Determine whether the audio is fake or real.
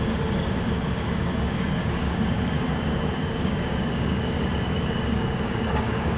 fake